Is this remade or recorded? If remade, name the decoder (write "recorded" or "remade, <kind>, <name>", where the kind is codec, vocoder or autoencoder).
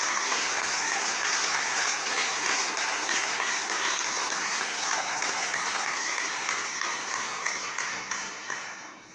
remade, codec, SNAC